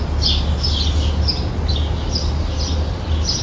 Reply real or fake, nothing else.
real